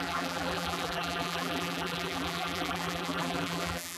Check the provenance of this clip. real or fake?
fake